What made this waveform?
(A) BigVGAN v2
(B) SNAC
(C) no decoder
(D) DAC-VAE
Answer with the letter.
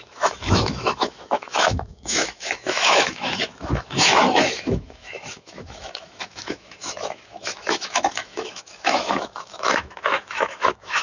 D